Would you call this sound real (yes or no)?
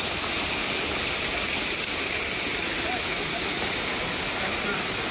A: yes